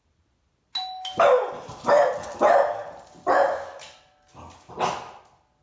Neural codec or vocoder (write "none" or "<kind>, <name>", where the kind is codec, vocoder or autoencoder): none